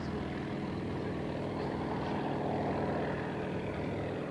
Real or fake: real